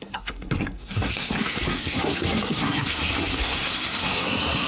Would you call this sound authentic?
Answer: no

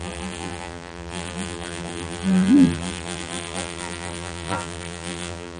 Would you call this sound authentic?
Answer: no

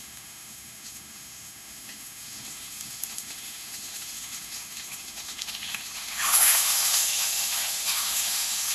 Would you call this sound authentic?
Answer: no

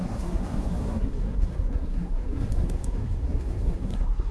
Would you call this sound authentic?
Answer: no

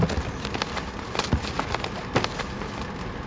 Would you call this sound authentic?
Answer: yes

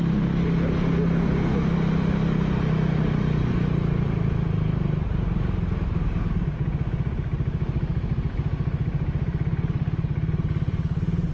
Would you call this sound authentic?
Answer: yes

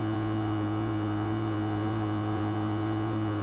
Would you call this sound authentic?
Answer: no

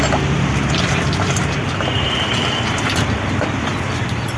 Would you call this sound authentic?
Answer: no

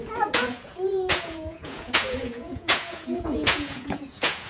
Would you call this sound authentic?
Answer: no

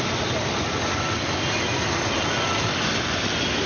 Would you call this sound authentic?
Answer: yes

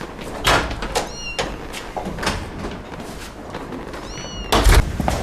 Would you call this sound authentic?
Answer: yes